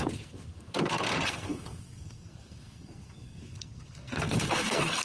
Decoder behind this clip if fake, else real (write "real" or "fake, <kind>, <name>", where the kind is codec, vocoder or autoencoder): fake, codec, SNAC